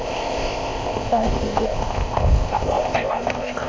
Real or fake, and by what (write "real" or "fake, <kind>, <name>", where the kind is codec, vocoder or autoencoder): fake, codec, ZipCodec